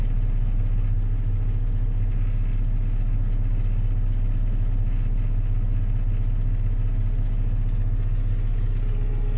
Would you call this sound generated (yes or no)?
no